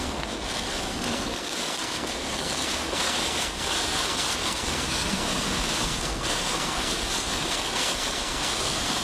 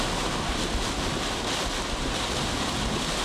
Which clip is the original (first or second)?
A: second